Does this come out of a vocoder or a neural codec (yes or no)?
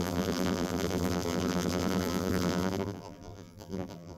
yes